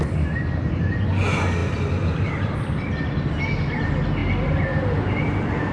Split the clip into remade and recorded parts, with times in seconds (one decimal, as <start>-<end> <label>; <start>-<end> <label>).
0.0-5.7 recorded